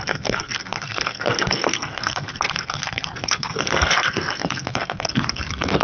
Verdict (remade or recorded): remade